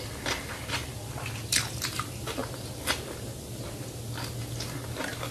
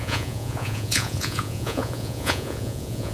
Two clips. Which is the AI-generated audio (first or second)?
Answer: second